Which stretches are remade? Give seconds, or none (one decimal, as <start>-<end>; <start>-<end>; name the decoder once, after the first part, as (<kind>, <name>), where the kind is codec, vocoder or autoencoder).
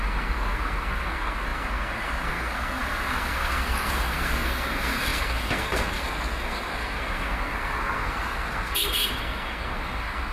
0.0-10.3 (codec, SNAC)